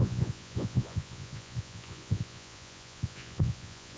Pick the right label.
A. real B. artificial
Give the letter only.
B